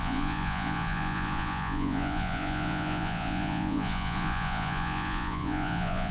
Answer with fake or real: fake